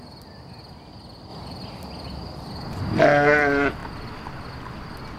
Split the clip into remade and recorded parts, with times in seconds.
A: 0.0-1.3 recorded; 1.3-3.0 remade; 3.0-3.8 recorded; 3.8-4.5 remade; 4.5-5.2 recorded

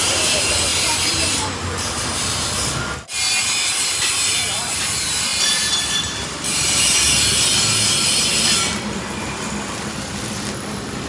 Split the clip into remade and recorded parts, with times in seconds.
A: 0.0-5.3 remade; 5.3-5.9 recorded; 5.9-11.1 remade

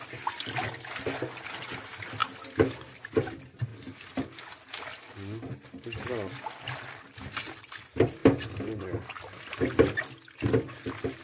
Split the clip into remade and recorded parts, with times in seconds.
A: 0.0-11.2 recorded

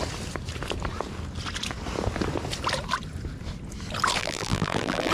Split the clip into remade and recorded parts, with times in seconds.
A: 0.0-4.2 recorded; 4.2-5.1 remade

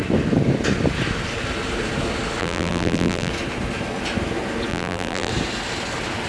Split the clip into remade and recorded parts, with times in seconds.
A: 0.0-2.4 recorded; 2.4-3.3 remade; 3.3-4.7 recorded; 4.7-5.3 remade; 5.3-6.3 recorded

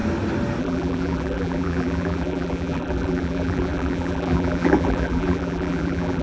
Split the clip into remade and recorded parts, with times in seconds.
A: 0.0-0.6 recorded; 0.6-6.2 remade